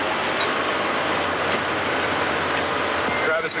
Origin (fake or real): real